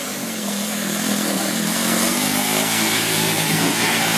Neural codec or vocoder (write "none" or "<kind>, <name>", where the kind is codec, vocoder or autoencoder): codec, SNAC